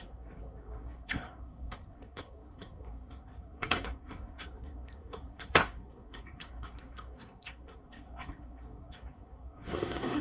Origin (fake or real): fake